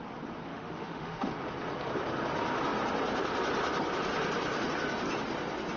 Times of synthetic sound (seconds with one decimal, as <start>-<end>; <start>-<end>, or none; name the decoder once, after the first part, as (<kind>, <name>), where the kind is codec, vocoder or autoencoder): 0.5-1.3 (autoencoder, DAC-VAE)